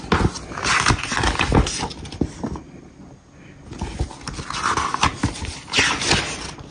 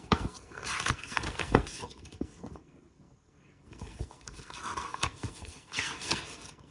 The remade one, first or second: second